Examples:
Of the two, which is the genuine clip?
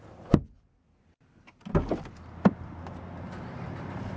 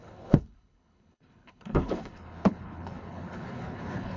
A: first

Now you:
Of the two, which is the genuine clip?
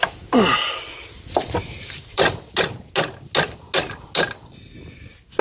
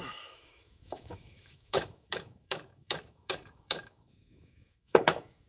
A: first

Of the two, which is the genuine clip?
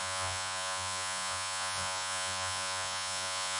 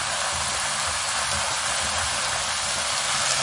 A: second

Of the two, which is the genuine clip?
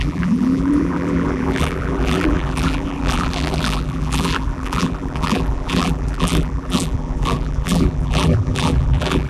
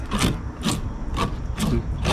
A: second